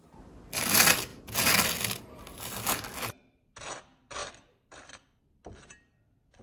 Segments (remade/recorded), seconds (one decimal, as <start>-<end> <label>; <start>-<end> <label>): 0.0-4.2 recorded; 4.2-5.2 remade; 5.2-6.4 recorded